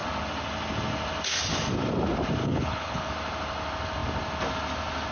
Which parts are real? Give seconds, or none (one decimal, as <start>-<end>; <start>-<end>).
0.0-2.4; 3.1-5.1